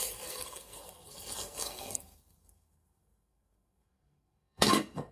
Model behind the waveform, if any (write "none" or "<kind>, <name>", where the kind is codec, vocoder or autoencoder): codec, SNAC